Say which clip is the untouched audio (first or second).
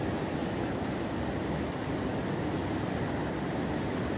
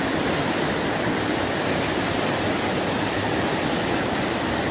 first